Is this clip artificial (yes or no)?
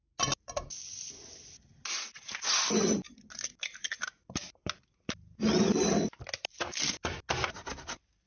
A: no